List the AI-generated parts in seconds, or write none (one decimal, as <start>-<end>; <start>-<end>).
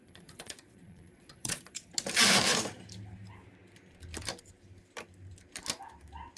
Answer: 0.0-1.9